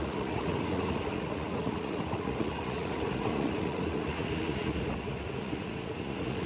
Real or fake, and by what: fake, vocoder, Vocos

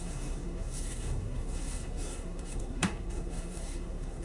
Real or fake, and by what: fake, codec, SNAC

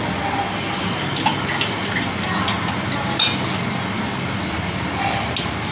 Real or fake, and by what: real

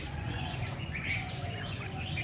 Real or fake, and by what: fake, vocoder, Vocos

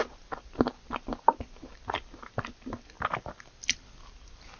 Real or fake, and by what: real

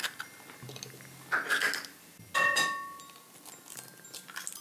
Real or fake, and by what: real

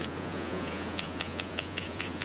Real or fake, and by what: fake, vocoder, Vocos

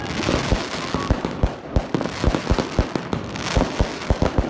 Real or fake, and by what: real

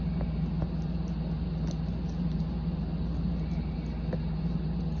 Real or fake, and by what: real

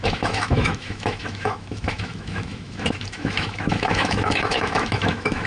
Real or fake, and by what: fake, autoencoder, DAC-VAE